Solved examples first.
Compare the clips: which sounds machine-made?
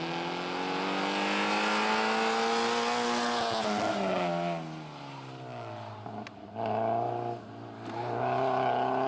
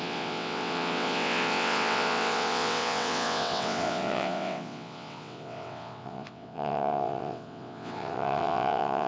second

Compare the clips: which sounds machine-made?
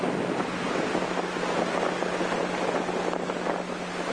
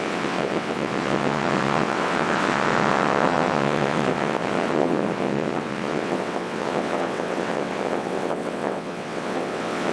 second